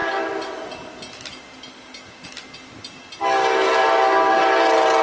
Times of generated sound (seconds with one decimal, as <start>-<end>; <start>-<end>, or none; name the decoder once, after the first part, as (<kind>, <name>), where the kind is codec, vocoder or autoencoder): none